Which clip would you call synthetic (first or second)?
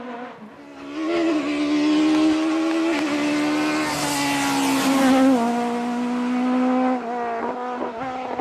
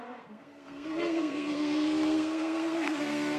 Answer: second